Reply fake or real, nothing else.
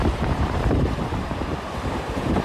fake